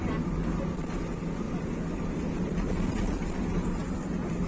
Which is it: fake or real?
real